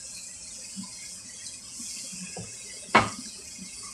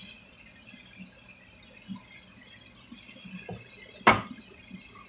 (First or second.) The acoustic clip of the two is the second